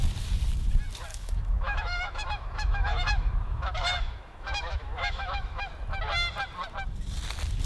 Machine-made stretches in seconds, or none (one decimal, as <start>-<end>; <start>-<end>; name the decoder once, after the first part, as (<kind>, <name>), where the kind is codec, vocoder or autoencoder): 1.1-5.7 (autoencoder, DAC-VAE)